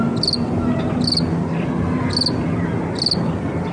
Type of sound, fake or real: real